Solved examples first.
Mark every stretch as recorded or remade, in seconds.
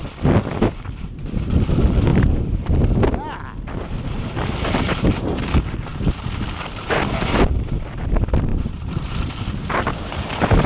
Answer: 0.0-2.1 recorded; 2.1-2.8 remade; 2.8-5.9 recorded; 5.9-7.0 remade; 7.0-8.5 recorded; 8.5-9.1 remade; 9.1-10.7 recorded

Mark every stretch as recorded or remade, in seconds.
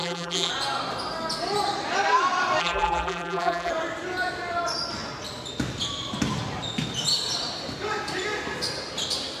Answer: 0.0-0.5 remade; 0.5-2.6 recorded; 2.6-3.7 remade; 3.7-9.4 recorded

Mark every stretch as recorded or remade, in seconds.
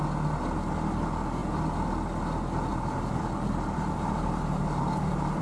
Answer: 0.0-2.7 recorded; 2.7-5.4 remade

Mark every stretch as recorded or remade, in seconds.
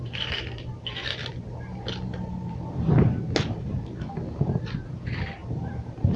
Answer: 0.0-1.2 remade; 1.2-3.4 recorded; 3.4-6.2 remade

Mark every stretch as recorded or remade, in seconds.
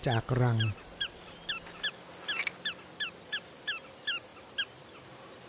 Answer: 0.0-1.5 remade; 1.5-5.5 recorded